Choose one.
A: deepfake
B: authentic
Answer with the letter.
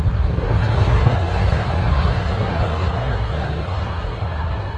A